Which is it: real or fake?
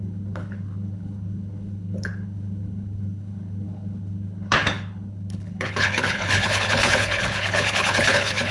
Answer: fake